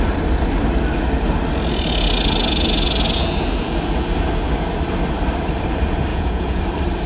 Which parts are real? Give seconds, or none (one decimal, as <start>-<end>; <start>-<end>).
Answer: 0.0-6.1; 6.6-7.1

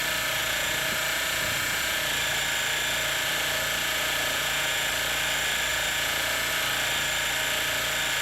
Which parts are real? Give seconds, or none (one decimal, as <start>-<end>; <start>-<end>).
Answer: 0.0-0.4; 2.0-3.8; 4.9-5.7; 6.5-8.2

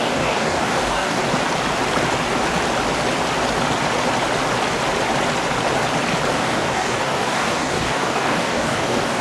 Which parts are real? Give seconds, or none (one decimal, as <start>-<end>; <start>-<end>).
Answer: 1.2-6.3

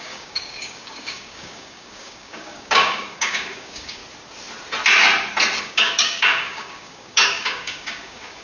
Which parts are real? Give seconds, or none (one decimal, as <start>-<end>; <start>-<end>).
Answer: 4.0-5.6